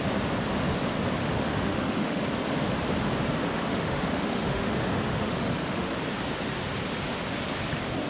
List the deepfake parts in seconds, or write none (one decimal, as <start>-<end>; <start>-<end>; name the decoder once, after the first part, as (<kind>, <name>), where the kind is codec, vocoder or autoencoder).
1.2-2.2 (autoencoder, DAC-VAE); 3.6-6.0